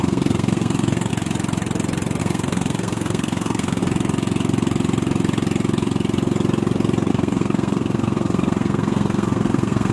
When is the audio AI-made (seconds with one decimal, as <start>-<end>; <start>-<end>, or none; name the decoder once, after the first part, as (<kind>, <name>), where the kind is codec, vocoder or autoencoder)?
0.0-1.1 (codec, SNAC); 2.2-3.8; 7.1-9.9